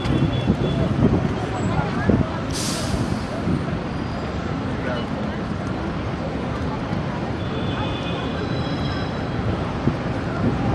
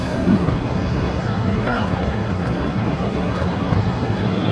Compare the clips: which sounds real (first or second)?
first